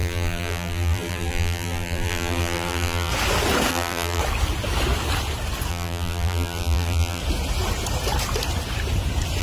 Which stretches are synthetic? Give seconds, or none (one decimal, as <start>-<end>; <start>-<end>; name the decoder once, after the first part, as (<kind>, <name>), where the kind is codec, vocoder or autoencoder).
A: 0.0-3.1 (vocoder, BigVGAN v2); 3.7-4.2; 5.7-7.2

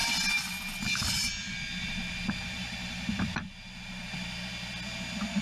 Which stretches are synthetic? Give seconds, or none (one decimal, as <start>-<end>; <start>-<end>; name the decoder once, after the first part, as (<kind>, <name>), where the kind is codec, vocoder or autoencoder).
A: none

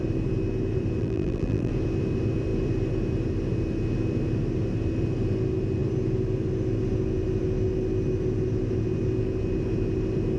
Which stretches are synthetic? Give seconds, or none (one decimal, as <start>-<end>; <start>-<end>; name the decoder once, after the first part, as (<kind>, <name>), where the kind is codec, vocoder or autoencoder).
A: 1.0-1.7 (vocoder, BigVGAN v2)

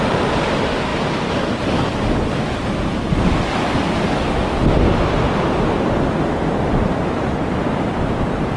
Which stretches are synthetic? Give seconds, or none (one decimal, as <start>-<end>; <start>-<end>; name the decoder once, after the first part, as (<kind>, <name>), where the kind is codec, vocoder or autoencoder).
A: none